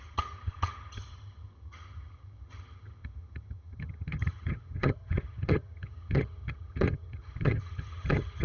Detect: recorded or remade remade